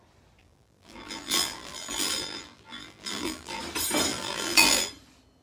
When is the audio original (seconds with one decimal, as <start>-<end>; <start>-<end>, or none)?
0.0-0.4; 3.6-4.1; 4.9-5.4